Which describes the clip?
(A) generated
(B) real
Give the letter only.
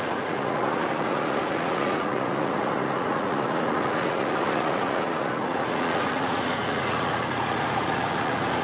A